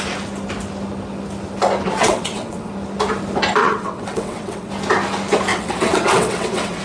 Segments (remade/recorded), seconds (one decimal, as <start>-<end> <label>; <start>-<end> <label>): 0.0-2.0 recorded; 2.0-2.7 remade; 2.7-3.6 recorded; 3.6-4.7 remade; 4.7-5.5 recorded; 5.5-6.8 remade